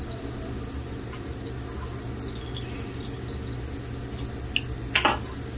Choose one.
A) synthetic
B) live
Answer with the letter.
B